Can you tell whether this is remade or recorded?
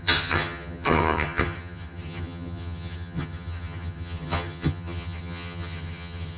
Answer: remade